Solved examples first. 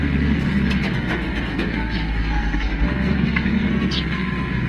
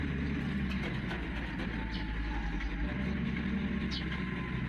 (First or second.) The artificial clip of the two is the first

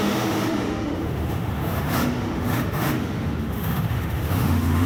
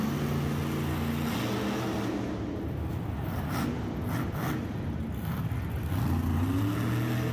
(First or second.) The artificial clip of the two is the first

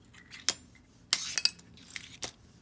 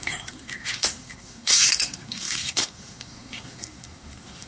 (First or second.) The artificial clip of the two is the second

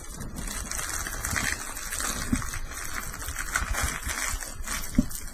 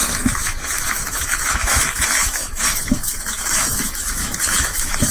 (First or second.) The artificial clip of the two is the second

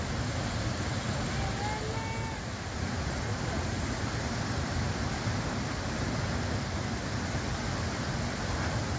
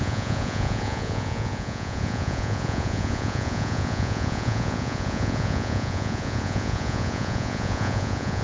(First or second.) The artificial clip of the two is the second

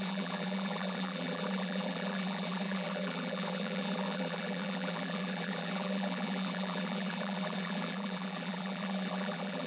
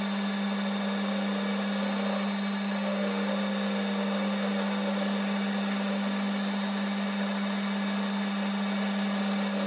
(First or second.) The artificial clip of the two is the first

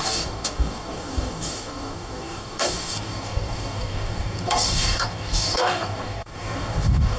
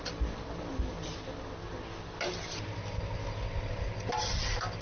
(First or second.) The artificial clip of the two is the first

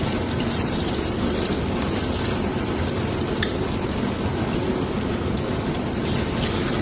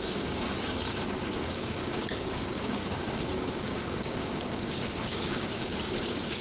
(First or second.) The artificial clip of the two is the second